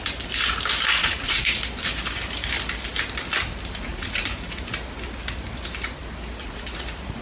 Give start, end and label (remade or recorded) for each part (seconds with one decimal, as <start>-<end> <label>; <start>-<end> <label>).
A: 0.0-1.0 recorded; 1.0-1.6 remade; 1.6-3.9 recorded; 3.9-4.6 remade; 4.6-6.4 recorded; 6.4-7.2 remade